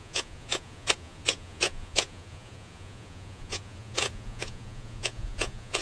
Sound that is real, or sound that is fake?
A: fake